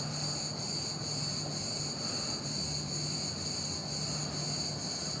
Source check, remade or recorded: recorded